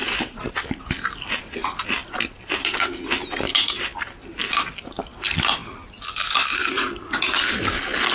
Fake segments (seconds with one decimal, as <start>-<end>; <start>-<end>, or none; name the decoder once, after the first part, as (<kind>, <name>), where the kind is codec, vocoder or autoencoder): none